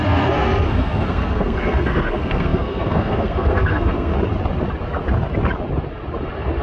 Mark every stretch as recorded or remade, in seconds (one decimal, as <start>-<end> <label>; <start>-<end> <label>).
0.0-4.1 remade; 4.1-6.6 recorded